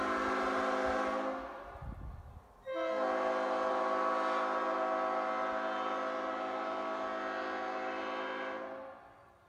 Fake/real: real